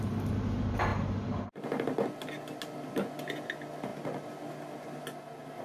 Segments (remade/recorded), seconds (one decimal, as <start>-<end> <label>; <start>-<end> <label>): 0.0-5.6 recorded